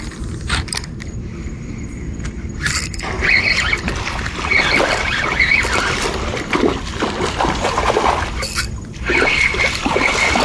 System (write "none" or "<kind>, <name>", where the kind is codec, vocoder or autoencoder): vocoder, BigVGAN v2